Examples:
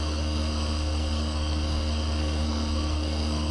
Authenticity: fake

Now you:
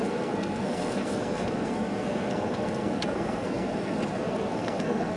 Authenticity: fake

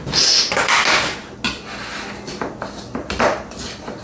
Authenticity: real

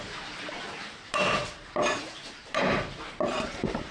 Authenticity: fake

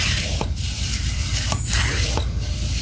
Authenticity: real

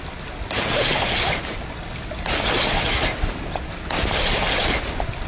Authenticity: real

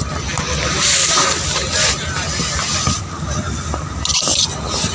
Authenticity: real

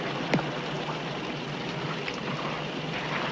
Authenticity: real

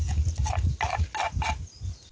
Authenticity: real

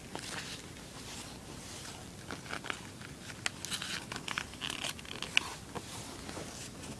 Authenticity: real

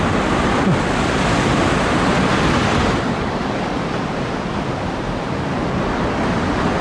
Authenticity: real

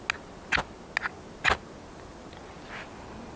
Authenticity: real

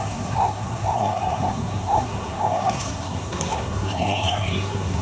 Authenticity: fake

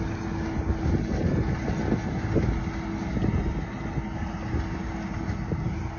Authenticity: real